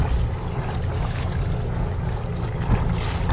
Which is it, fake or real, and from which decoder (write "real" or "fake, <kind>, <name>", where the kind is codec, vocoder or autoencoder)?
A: real